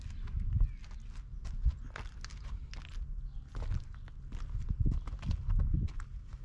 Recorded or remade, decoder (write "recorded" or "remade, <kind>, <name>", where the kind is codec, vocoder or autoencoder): recorded